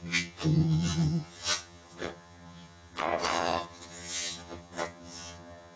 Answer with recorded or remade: remade